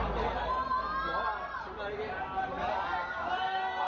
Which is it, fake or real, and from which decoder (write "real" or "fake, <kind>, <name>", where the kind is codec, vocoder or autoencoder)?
real